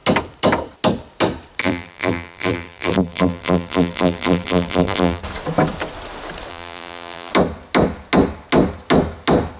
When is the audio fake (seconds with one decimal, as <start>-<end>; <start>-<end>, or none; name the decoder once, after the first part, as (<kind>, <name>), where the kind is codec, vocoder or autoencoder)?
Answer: 1.6-5.2 (vocoder, BigVGAN v2); 6.5-7.3